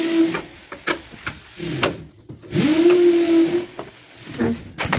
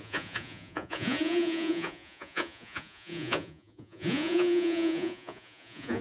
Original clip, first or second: first